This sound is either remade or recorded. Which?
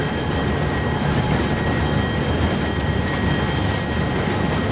recorded